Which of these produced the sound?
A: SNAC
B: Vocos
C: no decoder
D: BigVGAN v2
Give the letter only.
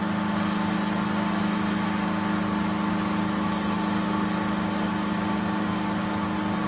C